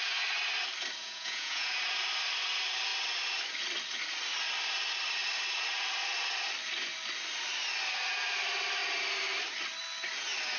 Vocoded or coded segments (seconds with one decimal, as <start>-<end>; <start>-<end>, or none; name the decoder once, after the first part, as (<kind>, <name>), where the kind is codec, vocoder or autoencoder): 1.0-1.7 (vocoder, Vocos)